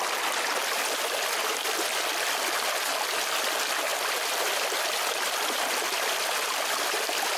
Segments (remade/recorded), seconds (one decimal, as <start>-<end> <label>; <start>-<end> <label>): 0.0-7.4 recorded